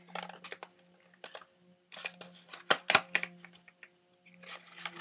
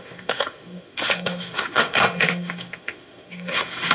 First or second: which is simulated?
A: second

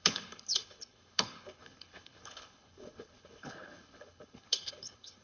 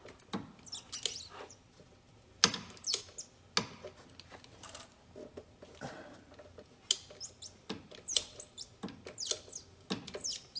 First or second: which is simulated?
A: first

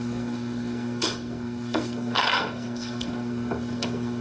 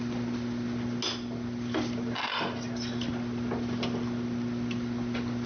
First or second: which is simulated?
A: first